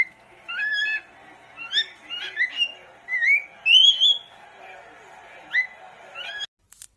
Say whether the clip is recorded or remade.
recorded